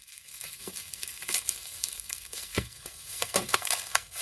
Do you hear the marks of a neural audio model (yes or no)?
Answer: yes